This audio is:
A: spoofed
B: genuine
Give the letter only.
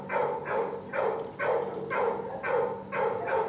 B